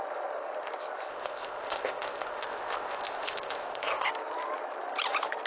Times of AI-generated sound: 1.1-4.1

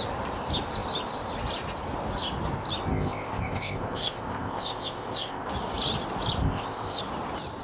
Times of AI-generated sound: 2.9-5.5; 6.4-7.0

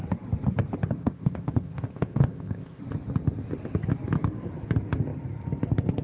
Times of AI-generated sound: 1.0-2.8